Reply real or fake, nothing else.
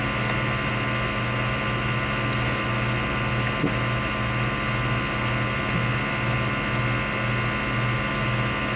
real